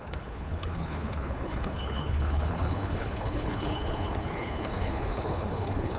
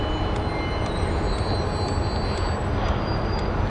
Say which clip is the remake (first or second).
first